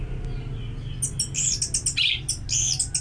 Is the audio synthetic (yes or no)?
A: no